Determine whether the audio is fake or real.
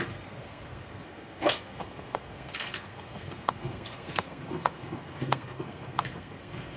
fake